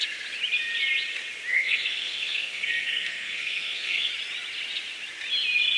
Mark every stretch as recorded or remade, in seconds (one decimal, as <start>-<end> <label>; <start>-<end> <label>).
0.0-1.5 recorded; 1.5-4.1 remade; 4.1-5.8 recorded